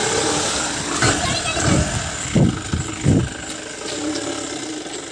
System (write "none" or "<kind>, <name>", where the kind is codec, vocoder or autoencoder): none